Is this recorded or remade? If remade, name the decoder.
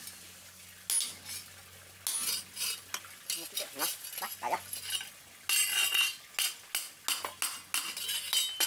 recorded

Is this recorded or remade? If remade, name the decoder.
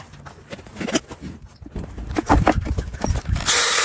recorded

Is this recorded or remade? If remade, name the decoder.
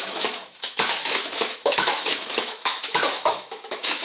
remade, autoencoder, DAC-VAE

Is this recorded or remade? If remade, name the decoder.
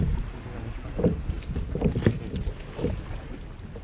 recorded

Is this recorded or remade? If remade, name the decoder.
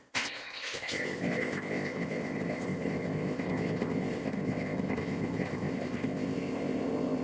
remade, codec, ZipCodec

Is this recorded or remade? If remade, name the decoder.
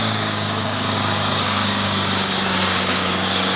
remade, codec, DAC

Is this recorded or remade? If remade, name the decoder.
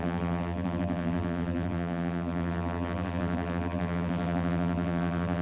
remade, vocoder, BigVGAN v2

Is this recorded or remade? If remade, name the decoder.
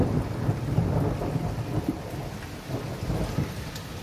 recorded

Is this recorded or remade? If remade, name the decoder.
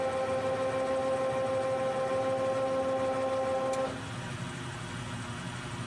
recorded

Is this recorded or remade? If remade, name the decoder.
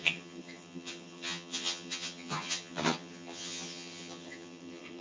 remade, vocoder, HiFi-GAN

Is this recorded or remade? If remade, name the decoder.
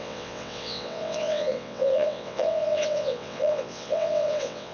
remade, vocoder, WaveNeXt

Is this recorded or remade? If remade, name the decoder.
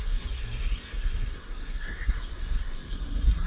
remade, codec, SNAC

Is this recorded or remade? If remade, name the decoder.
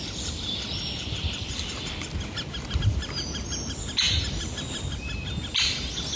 recorded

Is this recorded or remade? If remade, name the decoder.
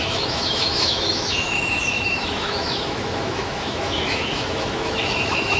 remade, autoencoder, DAC-VAE